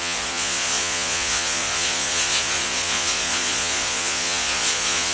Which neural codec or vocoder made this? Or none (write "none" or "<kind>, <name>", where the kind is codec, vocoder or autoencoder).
vocoder, Vocos